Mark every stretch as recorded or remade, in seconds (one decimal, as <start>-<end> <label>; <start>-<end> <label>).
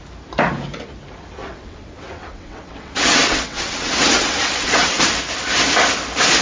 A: 0.0-1.4 recorded; 1.4-5.0 remade; 5.0-6.4 recorded